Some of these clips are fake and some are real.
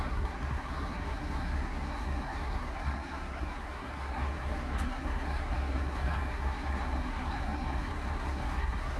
fake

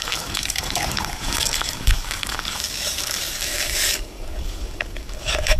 fake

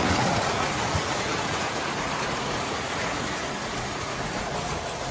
fake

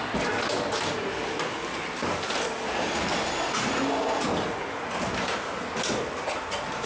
real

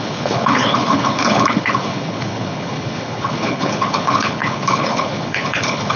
fake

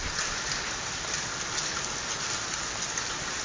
real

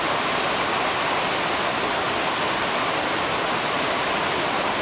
real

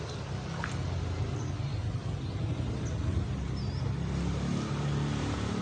real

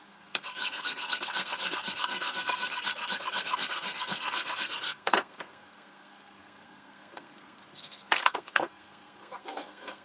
fake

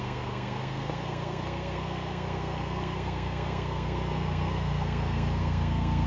fake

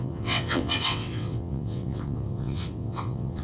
fake